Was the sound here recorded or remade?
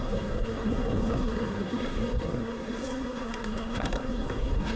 remade